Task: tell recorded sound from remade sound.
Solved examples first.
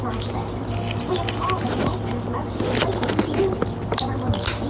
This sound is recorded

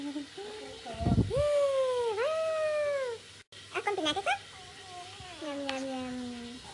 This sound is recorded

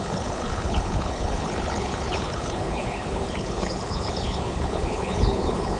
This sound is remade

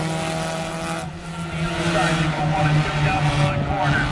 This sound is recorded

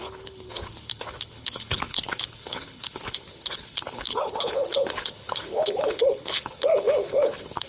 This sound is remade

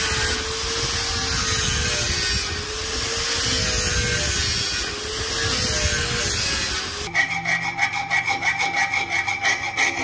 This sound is recorded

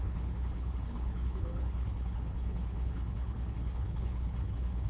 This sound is remade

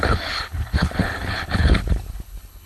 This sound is remade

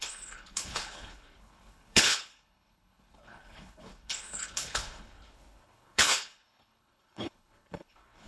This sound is remade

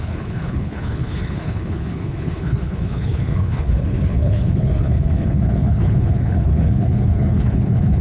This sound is remade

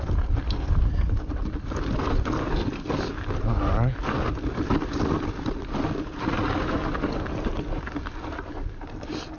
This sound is recorded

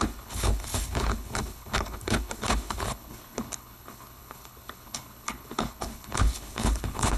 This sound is remade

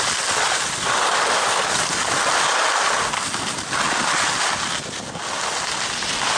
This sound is recorded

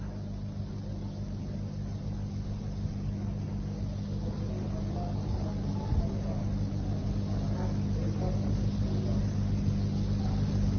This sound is recorded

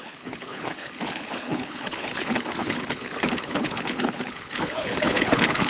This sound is remade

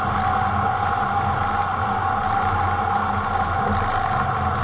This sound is recorded